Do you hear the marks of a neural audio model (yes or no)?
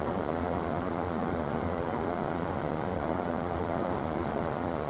yes